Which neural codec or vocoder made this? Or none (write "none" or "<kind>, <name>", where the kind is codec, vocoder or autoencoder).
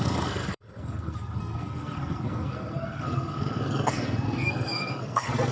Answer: codec, SNAC